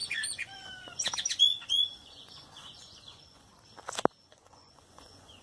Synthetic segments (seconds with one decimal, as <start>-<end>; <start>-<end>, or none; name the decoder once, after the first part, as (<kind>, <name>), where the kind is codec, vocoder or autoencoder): 0.0-3.5 (vocoder, Vocos); 4.2-5.4